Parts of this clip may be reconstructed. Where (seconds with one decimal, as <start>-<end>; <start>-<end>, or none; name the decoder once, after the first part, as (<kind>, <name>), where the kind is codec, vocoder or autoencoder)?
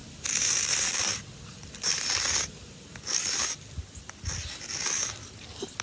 none